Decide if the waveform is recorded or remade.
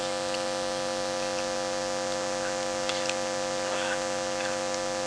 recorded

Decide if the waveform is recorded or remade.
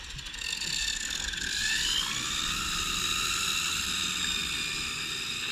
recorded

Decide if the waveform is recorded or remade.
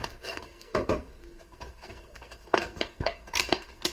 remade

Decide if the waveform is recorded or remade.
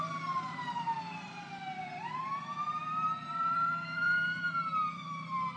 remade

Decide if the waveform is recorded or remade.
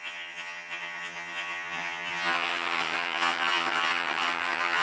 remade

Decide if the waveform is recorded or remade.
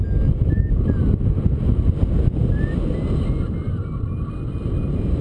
recorded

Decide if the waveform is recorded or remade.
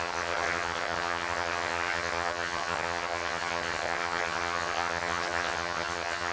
remade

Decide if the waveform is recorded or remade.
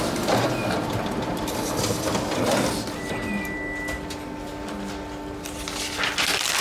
recorded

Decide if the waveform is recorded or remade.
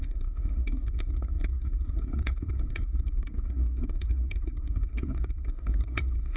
remade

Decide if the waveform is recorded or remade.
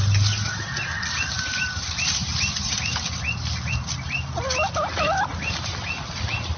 recorded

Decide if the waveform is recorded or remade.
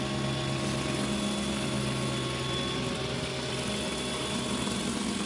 recorded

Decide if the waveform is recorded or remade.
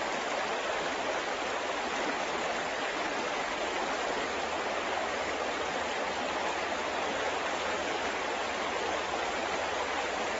recorded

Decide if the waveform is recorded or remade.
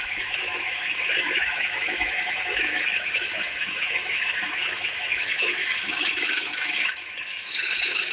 remade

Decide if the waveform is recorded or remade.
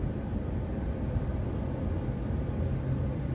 recorded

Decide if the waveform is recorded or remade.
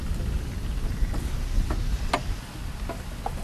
recorded